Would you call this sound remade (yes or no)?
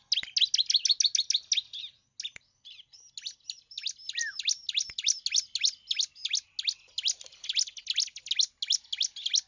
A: no